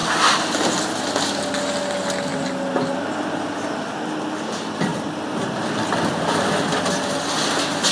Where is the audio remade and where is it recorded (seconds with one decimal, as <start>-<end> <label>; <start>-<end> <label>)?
0.0-7.9 recorded